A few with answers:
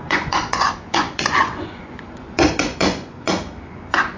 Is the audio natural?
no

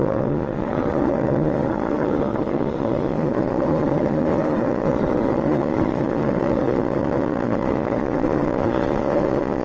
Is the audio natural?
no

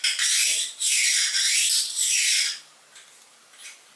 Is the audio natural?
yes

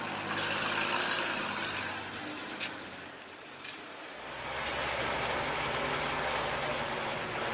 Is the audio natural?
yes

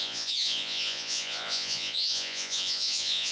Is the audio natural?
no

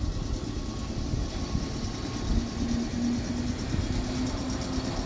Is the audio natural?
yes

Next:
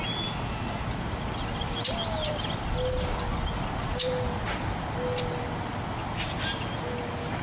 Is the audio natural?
yes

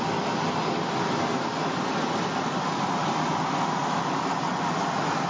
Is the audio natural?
yes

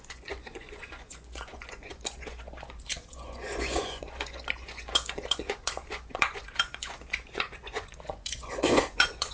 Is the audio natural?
no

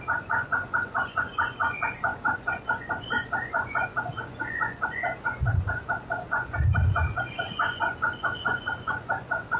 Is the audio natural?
no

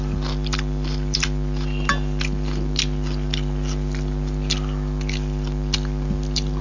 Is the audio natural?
yes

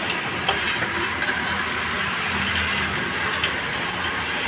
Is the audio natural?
yes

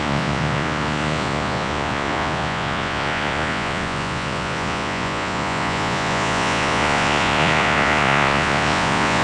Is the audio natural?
no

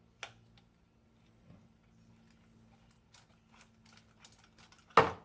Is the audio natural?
yes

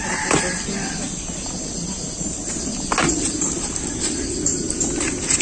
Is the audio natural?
yes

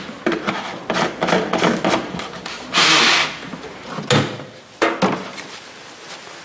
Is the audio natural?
yes